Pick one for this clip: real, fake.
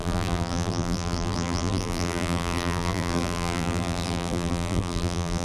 fake